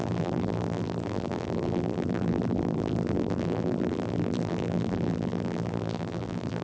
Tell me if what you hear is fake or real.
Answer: fake